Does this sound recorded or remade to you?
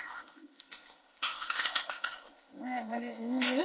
remade